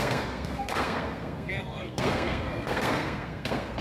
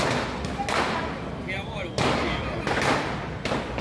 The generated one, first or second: first